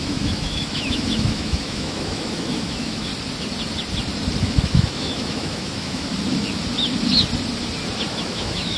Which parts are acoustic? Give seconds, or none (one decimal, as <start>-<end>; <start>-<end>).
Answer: 3.1-4.4; 6.1-8.1